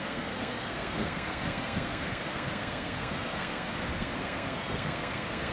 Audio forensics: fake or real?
fake